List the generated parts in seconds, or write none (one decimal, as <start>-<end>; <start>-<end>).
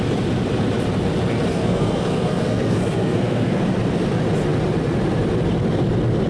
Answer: 1.5-3.6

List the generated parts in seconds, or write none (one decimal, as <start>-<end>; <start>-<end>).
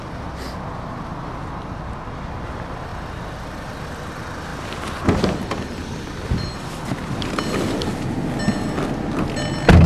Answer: none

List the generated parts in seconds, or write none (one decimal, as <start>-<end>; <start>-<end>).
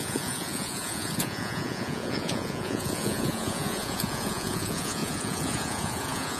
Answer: 0.0-6.4